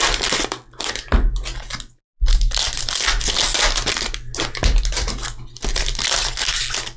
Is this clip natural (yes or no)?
yes